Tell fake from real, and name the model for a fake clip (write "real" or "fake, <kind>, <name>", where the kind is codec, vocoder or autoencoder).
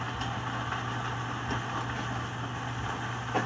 fake, vocoder, BigVGAN v2